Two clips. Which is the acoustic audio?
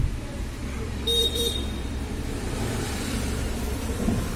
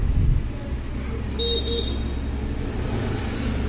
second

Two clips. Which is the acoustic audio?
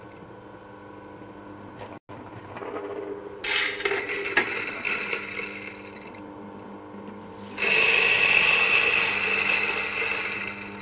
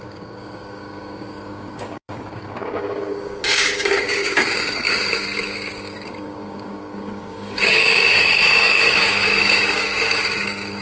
first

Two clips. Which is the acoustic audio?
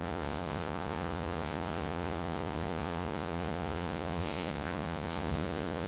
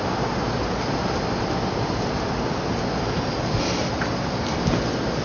second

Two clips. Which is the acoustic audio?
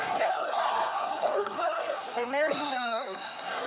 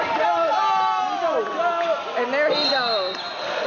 second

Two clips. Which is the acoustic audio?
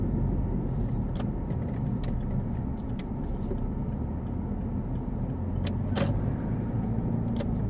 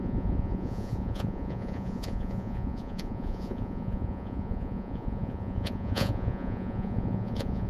first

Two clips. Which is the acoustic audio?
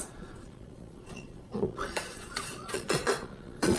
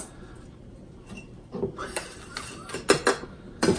second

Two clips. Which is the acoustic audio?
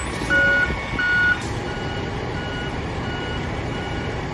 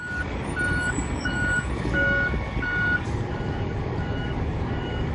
first